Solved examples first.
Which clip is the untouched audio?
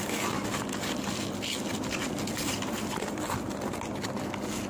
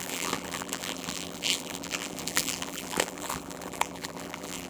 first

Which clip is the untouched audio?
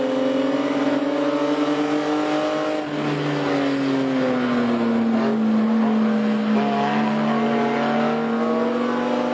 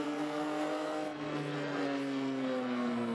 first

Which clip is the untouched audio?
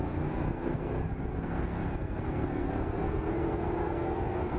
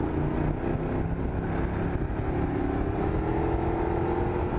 second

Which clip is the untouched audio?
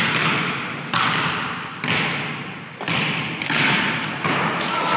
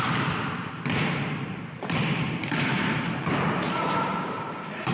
first